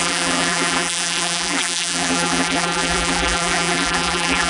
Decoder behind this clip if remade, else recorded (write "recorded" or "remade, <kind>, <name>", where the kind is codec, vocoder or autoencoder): remade, vocoder, BigVGAN v2